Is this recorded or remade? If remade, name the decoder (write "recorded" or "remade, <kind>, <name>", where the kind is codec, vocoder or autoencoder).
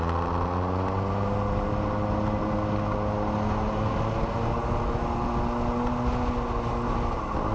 recorded